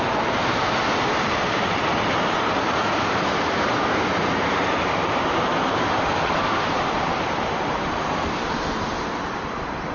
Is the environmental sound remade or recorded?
remade